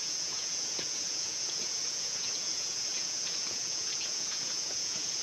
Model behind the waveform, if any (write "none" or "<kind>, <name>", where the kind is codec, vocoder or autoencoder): vocoder, Vocos